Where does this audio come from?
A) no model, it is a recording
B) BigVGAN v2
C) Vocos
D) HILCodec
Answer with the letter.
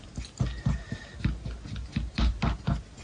A